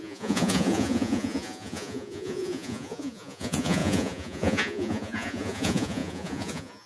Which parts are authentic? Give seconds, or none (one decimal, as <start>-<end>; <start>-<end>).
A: none